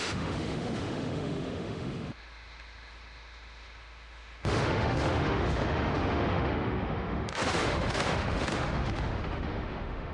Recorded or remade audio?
remade